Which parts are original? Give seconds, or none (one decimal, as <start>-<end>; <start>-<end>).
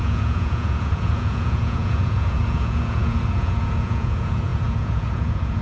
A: none